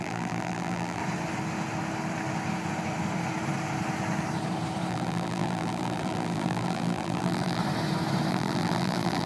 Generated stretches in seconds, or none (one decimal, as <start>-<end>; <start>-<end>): 0.0-1.0; 4.9-7.6; 8.3-9.3